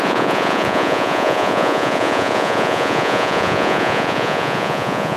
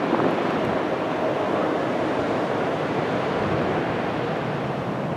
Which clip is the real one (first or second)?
second